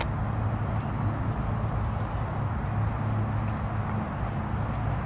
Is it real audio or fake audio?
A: real